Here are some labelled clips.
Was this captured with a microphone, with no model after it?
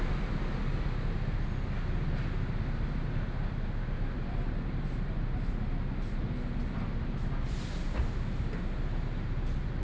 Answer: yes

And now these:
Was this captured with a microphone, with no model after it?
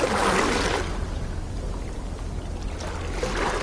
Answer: yes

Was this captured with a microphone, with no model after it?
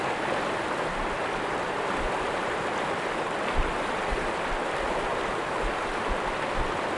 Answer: yes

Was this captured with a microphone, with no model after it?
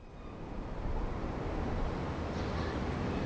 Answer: yes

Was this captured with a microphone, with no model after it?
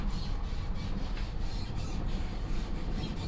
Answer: yes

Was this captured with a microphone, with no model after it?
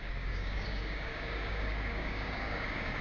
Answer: no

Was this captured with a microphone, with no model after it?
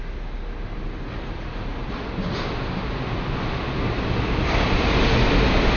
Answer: yes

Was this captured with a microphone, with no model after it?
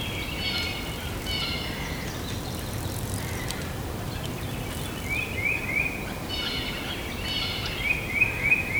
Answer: yes